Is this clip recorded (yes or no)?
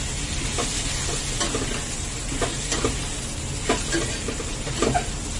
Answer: yes